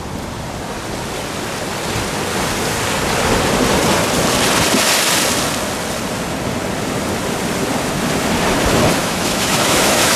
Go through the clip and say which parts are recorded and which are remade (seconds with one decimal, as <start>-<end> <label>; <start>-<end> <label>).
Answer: 0.0-9.0 recorded; 9.0-10.2 remade